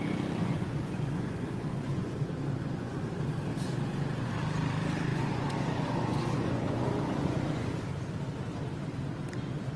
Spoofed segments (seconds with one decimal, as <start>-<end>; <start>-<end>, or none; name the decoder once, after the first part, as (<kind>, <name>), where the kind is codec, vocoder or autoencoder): 0.4-3.0 (vocoder, Vocos); 3.5-4.3; 5.1-7.7